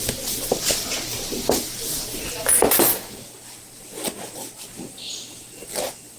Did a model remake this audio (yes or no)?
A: no